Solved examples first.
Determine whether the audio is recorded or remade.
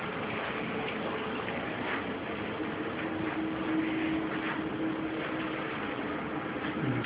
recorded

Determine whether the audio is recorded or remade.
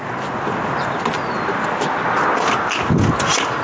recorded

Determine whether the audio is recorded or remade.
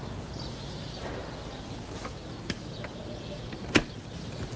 recorded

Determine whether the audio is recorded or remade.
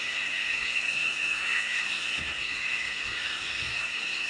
remade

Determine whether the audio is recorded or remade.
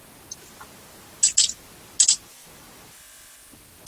recorded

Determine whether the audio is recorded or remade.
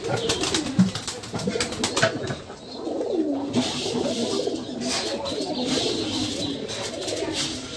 recorded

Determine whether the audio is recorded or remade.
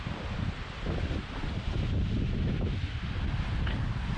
recorded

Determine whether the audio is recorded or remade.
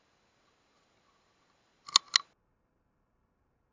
recorded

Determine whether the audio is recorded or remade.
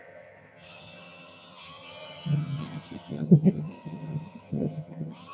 remade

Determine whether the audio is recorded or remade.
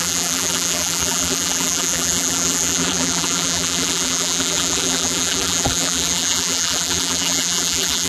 remade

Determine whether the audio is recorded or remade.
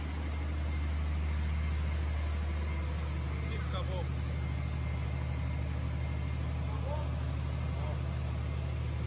recorded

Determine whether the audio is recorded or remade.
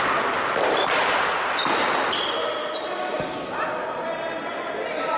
recorded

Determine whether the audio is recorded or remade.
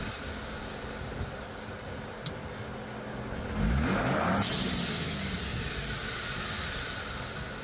recorded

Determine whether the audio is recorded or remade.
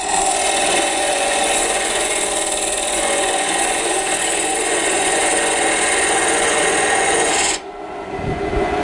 remade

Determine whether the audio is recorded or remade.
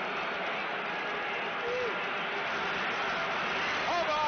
recorded